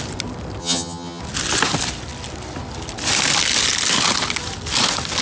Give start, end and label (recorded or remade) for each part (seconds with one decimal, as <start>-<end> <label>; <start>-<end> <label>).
0.0-0.6 recorded; 0.6-1.2 remade; 1.2-5.2 recorded